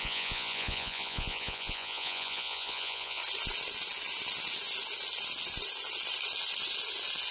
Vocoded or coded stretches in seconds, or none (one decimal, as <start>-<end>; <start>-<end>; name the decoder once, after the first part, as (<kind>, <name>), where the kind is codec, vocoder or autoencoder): 0.0-3.2 (vocoder, Vocos)